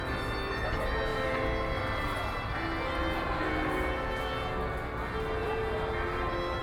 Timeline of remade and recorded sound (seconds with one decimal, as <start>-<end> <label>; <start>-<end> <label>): 0.0-1.1 recorded; 1.1-1.8 remade; 1.8-5.4 recorded; 5.4-6.6 remade